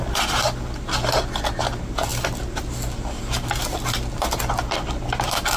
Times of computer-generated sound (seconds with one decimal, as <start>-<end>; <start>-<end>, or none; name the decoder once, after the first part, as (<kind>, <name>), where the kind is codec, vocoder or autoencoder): none